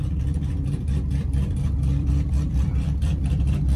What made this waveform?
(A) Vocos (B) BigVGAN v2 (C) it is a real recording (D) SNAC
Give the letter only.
B